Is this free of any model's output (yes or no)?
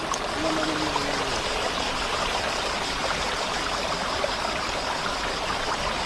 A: yes